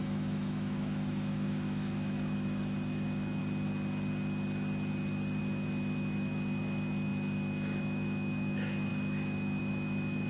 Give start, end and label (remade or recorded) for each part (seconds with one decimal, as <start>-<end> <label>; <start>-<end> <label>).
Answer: 0.0-3.4 remade; 3.4-5.4 recorded; 5.4-10.3 remade